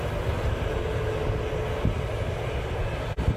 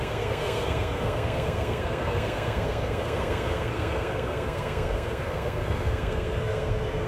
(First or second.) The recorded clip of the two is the first